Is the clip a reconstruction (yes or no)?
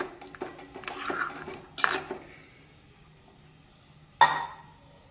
no